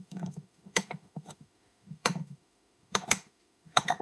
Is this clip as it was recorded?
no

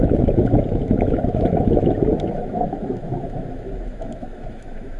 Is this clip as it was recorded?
no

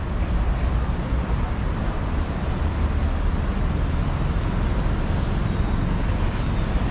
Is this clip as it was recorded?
yes